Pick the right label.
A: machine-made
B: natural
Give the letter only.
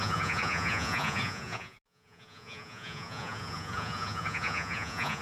A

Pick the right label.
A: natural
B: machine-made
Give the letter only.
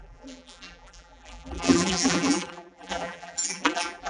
B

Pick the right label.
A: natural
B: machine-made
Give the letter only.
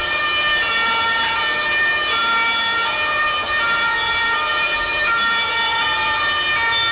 A